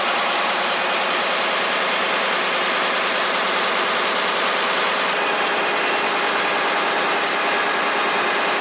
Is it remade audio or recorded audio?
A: recorded